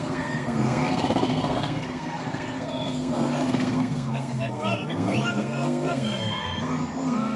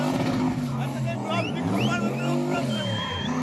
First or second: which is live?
second